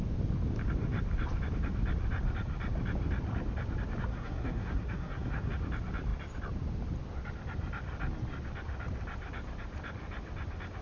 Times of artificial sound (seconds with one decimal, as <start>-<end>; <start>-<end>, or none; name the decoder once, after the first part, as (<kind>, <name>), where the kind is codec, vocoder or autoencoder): 4.1-5.5 (codec, SNAC)